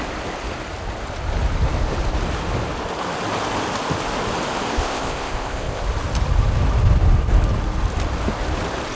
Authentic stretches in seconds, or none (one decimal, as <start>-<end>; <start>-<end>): 0.0-4.7; 5.8-9.0